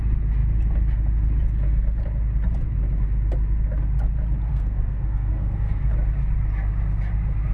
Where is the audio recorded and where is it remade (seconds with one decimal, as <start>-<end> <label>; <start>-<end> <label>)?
0.0-4.5 recorded; 4.5-5.8 remade; 5.8-7.5 recorded

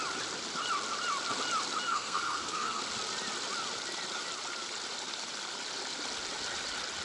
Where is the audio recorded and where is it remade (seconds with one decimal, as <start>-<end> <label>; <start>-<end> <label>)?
0.0-1.9 recorded; 1.9-2.8 remade; 2.8-7.0 recorded

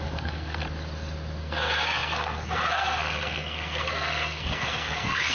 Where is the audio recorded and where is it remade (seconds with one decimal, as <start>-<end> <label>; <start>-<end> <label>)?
0.0-0.6 remade; 0.6-1.4 recorded; 1.4-5.3 remade

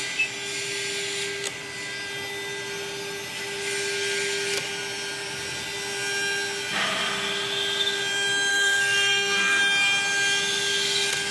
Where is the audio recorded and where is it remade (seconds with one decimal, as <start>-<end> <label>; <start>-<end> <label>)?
0.0-8.5 recorded; 8.5-9.6 remade; 9.6-11.3 recorded

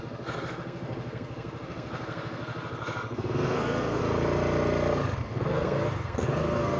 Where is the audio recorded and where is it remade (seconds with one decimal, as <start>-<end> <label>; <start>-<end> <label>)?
0.0-4.0 remade; 4.0-5.2 recorded; 5.2-6.8 remade